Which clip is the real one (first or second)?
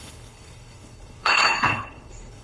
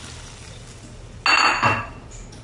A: second